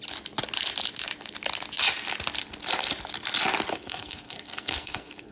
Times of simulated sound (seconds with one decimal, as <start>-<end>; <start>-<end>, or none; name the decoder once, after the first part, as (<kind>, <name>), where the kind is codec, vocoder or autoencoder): 3.7-5.3 (codec, SNAC)